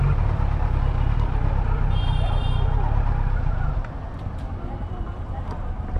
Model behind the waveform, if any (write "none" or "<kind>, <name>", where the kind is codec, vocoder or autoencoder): none